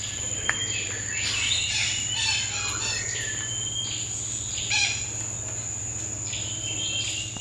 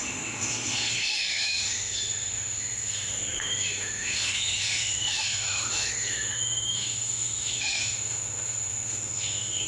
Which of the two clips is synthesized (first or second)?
second